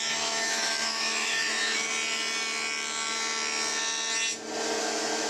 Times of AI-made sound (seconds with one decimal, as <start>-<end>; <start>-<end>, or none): 0.0-1.9; 4.8-5.3